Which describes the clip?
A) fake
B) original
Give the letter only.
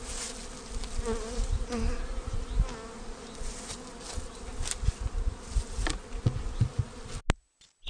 B